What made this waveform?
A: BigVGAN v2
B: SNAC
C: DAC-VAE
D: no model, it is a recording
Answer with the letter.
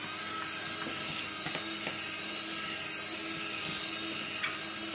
D